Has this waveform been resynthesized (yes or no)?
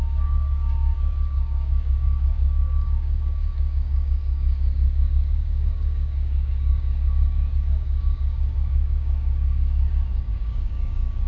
yes